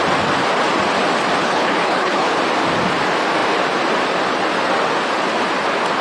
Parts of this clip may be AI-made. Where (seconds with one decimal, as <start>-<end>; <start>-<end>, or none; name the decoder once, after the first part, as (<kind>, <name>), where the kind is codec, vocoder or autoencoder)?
1.4-2.4 (codec, HILCodec)